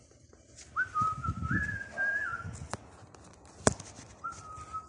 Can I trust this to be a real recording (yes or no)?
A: yes